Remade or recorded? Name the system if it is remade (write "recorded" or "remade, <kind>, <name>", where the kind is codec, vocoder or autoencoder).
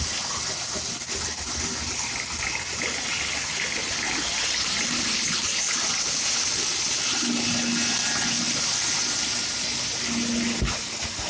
recorded